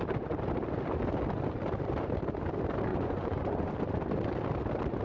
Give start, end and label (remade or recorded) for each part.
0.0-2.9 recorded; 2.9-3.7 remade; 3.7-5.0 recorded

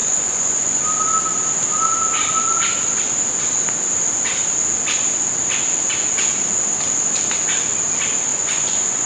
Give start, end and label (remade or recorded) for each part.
0.0-0.8 remade; 0.8-8.3 recorded; 8.3-9.1 remade

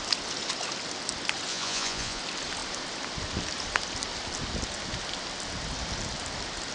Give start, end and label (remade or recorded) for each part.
0.0-1.5 recorded; 1.5-2.2 remade; 2.2-6.7 recorded

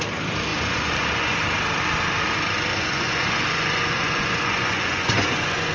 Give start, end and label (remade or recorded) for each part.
0.0-0.5 recorded; 0.5-1.4 remade; 1.4-2.7 recorded; 2.7-5.7 remade